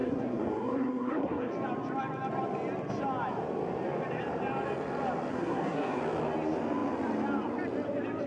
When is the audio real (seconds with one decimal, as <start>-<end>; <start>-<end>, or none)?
1.5-5.3; 6.0-8.3